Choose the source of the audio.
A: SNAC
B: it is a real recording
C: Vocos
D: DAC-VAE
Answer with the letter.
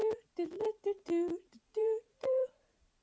C